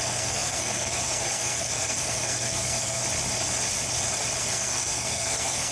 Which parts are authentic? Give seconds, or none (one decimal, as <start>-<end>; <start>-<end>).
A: 3.0-4.4